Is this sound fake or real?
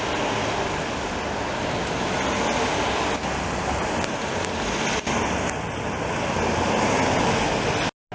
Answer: real